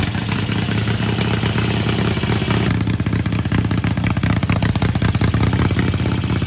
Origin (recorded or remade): recorded